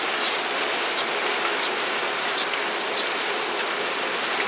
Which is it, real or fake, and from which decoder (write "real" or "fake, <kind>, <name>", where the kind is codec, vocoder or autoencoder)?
real